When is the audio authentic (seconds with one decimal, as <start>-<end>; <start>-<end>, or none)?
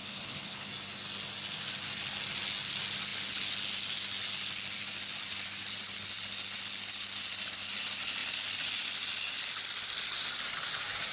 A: 0.7-11.1